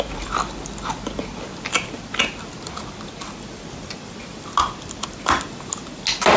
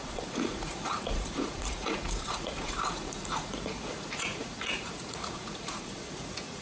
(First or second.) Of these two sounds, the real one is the first